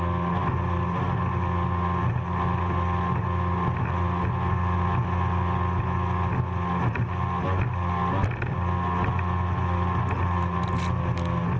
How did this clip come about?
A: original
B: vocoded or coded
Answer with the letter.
A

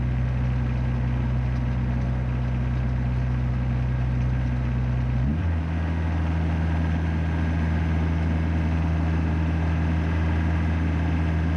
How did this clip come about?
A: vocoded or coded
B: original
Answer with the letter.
B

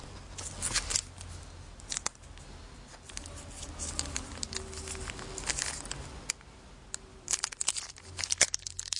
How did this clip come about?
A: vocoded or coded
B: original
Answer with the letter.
B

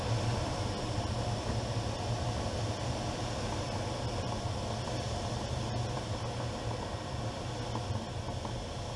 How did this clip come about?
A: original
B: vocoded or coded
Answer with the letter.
A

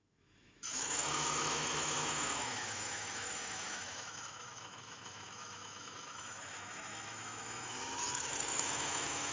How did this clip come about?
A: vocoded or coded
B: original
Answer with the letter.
A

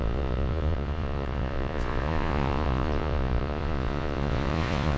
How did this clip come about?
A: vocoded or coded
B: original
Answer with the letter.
A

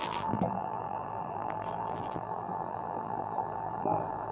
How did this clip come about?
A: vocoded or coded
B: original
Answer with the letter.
A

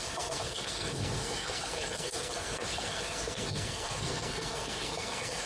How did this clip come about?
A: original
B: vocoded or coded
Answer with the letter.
B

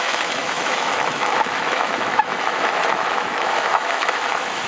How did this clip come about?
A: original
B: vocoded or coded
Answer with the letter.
B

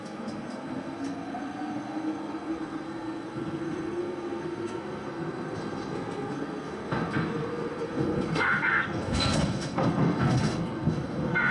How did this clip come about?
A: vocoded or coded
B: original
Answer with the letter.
A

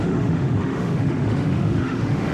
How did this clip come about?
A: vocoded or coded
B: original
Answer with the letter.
A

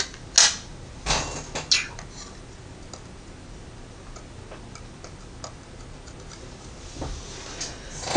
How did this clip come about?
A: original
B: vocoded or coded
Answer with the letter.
A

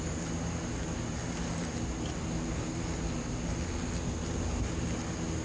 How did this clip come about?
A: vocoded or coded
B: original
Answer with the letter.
B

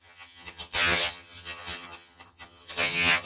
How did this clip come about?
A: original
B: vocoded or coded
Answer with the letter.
B